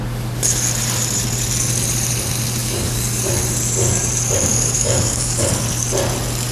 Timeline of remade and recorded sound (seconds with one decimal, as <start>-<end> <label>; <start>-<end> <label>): 0.0-2.6 recorded; 2.6-3.2 remade; 3.2-4.5 recorded; 4.5-5.5 remade; 5.5-6.5 recorded